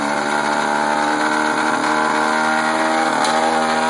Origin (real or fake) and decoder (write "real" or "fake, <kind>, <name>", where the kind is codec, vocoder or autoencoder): real